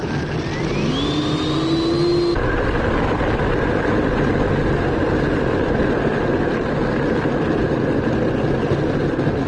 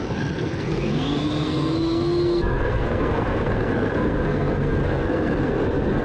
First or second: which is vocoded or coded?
second